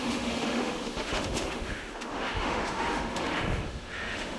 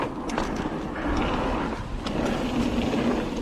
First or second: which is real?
second